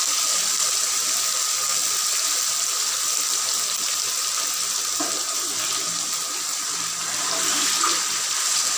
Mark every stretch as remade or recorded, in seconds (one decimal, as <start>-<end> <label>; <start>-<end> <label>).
0.0-1.7 remade; 1.7-6.6 recorded; 6.6-8.8 remade